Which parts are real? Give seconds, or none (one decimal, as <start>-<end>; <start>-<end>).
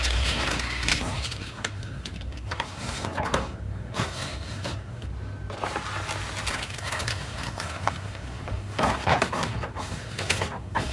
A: 5.1-6.5